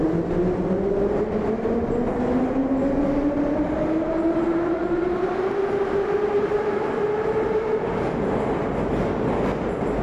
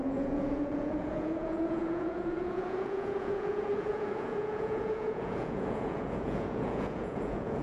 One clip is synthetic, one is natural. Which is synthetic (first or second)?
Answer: second